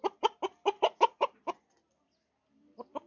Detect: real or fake real